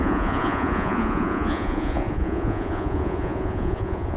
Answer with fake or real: fake